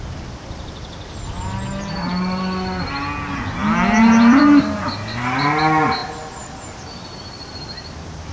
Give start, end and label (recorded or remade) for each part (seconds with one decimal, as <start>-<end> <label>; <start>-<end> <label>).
0.0-8.3 recorded